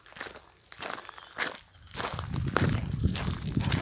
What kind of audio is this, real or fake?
real